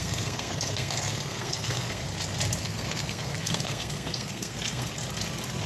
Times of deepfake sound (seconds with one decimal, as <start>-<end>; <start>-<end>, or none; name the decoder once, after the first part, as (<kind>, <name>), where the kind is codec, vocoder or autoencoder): 0.0-2.0 (codec, SNAC); 2.6-4.9